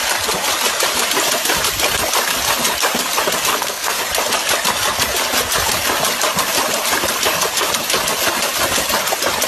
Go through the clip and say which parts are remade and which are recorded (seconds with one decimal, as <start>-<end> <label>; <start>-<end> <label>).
0.0-3.5 recorded; 3.5-4.0 remade; 4.0-9.5 recorded